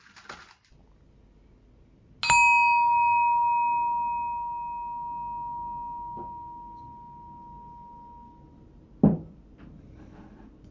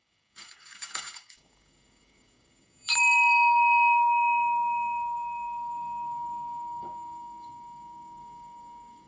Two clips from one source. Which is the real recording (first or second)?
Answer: first